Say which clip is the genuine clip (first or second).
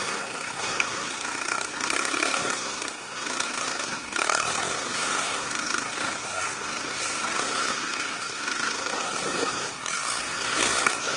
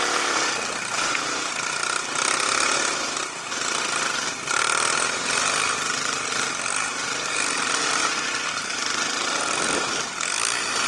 second